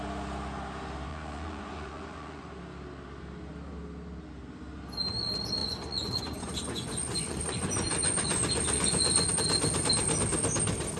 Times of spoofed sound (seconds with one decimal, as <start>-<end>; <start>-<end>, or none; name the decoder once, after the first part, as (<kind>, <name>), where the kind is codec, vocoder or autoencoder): 1.1-2.5 (vocoder, Vocos); 5.6-9.3